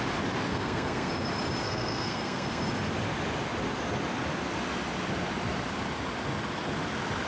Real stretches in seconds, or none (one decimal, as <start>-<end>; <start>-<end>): 0.0-0.5; 1.1-1.6; 2.6-7.3